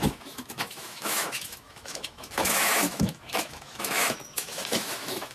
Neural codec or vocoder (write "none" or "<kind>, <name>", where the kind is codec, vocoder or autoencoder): autoencoder, DAC-VAE